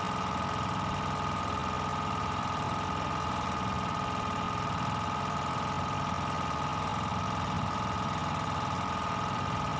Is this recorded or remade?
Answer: recorded